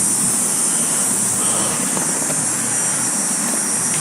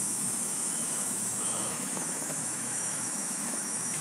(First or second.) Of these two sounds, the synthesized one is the second